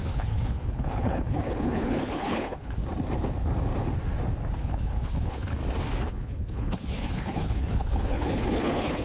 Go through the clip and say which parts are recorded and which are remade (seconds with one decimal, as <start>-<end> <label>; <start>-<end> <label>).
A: 0.0-2.8 remade; 2.8-4.6 recorded; 4.6-5.6 remade; 5.6-6.1 recorded; 6.1-9.0 remade